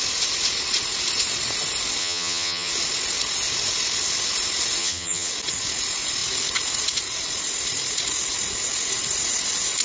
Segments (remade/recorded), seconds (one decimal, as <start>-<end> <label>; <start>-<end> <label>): 0.0-2.0 recorded; 2.0-2.7 remade; 2.7-4.8 recorded; 4.8-5.3 remade; 5.3-9.8 recorded